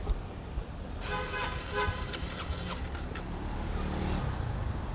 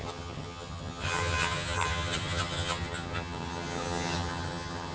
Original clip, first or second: first